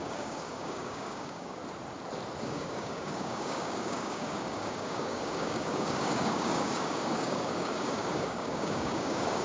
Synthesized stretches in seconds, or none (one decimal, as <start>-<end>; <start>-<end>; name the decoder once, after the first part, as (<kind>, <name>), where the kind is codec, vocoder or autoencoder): 0.0-1.6 (codec, DAC); 2.4-9.4